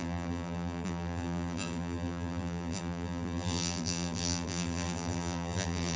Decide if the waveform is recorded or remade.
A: remade